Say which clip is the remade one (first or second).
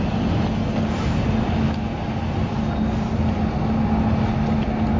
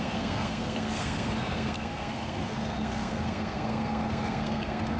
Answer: second